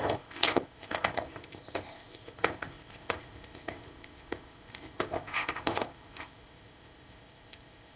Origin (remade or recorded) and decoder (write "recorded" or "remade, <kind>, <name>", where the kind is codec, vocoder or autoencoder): remade, codec, ZipCodec